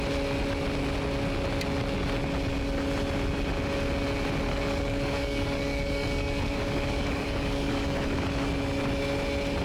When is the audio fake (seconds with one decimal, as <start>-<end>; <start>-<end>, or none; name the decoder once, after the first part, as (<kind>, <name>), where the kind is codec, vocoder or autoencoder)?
4.5-8.5 (codec, DAC)